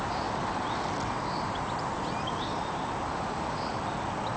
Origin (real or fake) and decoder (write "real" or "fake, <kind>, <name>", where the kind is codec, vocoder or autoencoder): real